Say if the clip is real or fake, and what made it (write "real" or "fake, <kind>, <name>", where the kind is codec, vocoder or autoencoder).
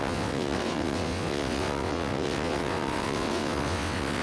fake, vocoder, WaveNeXt